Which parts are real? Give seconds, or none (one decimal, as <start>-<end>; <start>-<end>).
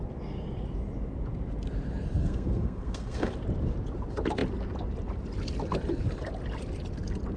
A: 0.0-2.2; 3.3-7.4